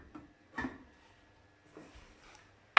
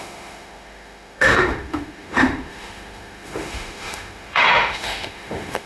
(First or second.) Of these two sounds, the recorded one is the first